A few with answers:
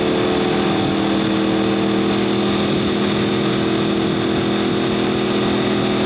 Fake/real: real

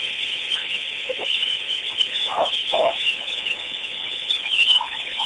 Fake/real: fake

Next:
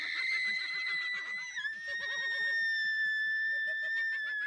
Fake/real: real